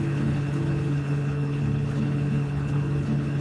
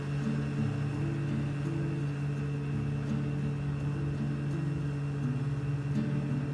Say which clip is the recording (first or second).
second